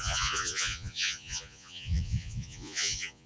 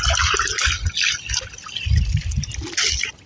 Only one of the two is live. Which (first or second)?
second